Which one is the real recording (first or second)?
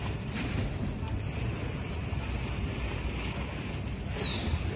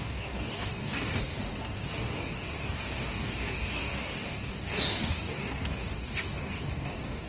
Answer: first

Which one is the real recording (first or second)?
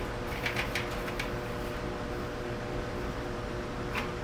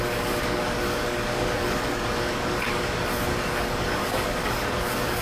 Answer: first